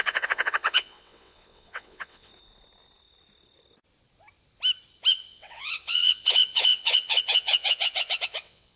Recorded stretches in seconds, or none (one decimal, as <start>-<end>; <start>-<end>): 2.3-5.1